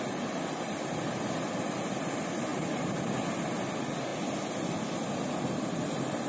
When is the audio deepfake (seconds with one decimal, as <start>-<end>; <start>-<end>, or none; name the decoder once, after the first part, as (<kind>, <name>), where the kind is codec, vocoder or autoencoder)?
none